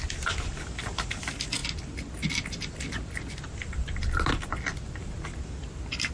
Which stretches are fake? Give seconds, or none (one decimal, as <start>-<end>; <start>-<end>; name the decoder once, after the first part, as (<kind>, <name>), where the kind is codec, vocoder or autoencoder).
none